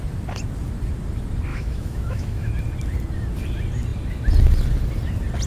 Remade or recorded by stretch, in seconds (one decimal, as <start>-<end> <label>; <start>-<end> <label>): 0.0-1.5 recorded; 1.5-2.5 remade; 2.5-5.5 recorded

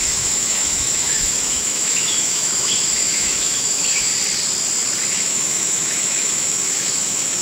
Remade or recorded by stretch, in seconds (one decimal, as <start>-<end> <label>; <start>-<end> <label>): 0.0-4.1 remade; 4.1-5.1 recorded; 5.1-7.4 remade

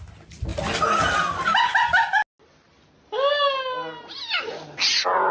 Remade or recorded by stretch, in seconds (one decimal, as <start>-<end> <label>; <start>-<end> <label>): 0.0-5.3 recorded

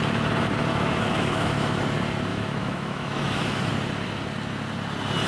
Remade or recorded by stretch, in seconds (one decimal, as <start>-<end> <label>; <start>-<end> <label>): 0.0-0.7 recorded; 0.7-1.8 remade; 1.8-2.3 recorded; 2.3-3.7 remade; 3.7-5.3 recorded

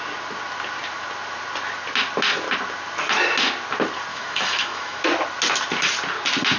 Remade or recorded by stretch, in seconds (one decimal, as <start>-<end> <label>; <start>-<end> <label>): 0.0-4.1 recorded; 4.1-5.0 remade; 5.0-6.6 recorded